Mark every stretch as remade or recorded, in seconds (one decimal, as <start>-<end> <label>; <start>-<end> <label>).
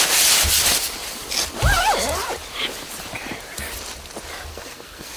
0.0-4.5 recorded; 4.5-5.2 remade